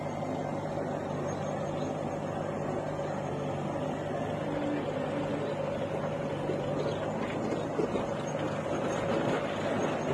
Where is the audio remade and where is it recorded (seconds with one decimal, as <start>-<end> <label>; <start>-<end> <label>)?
0.0-10.1 recorded